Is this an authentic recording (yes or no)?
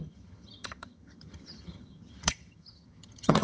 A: no